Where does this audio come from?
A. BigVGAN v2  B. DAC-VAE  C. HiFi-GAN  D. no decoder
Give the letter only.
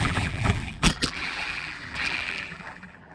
A